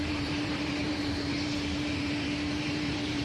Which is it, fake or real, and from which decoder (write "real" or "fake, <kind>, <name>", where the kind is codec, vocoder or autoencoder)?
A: fake, vocoder, BigVGAN v2